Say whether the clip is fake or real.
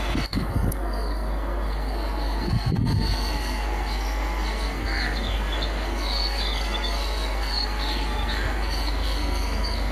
fake